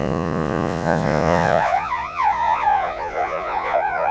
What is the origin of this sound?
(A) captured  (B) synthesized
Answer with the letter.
B